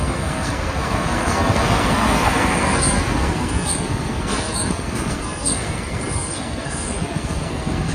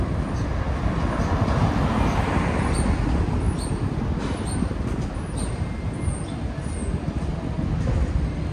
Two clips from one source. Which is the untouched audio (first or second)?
second